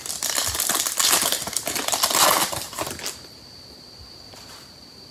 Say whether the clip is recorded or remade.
recorded